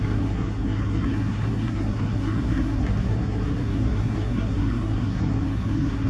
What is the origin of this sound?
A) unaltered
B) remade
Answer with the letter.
B